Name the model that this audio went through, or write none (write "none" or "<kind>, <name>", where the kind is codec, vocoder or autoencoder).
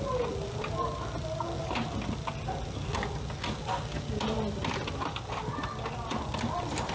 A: none